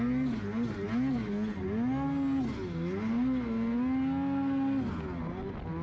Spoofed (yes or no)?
no